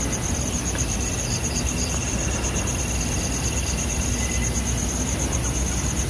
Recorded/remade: recorded